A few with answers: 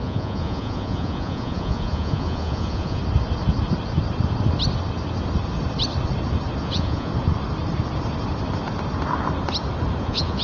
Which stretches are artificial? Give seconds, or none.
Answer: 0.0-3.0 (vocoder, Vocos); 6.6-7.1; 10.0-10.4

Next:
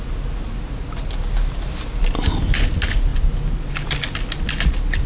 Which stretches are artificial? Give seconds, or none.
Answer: none

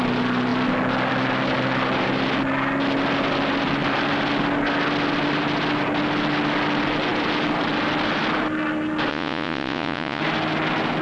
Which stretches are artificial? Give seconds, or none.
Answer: 9.1-10.2 (vocoder, Vocos)